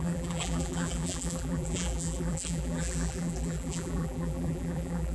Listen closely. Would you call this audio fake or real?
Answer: fake